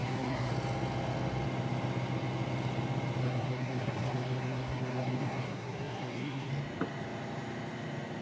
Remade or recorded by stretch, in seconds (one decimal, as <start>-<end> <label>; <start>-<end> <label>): 0.0-0.5 remade; 0.5-3.2 recorded; 3.2-6.5 remade; 6.5-8.2 recorded